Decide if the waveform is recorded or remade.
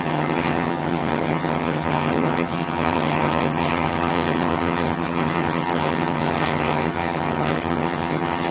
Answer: remade